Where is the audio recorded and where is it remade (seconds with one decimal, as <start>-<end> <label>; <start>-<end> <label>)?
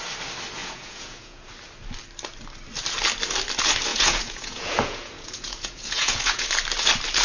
0.0-0.6 recorded; 0.6-1.5 remade; 1.5-3.9 recorded; 3.9-6.5 remade; 6.5-7.2 recorded